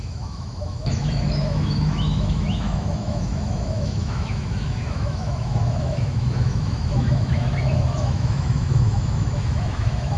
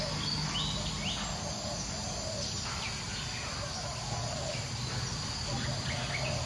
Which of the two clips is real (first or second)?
second